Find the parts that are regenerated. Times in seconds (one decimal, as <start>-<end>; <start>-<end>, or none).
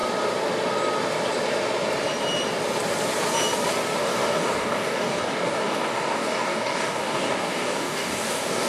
4.0-8.7